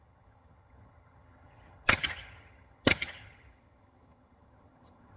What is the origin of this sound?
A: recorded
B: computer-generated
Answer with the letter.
B